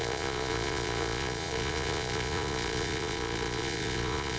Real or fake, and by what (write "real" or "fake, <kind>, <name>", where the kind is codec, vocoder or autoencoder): fake, vocoder, Vocos